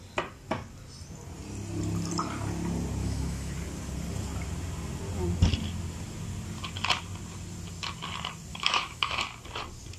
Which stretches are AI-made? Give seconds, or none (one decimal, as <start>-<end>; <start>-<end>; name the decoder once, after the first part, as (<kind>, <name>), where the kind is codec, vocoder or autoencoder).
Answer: 3.0-3.5 (autoencoder, DAC-VAE); 8.5-9.2